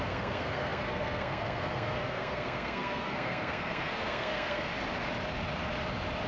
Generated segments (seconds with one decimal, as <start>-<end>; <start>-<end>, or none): 0.0-4.7